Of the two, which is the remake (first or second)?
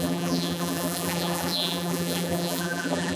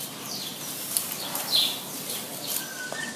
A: first